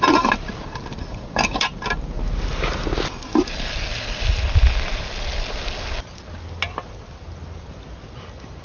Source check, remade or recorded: recorded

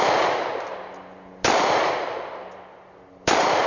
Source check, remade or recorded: recorded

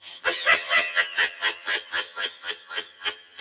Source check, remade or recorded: remade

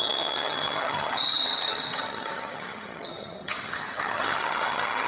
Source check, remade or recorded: remade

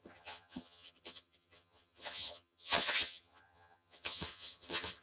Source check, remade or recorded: remade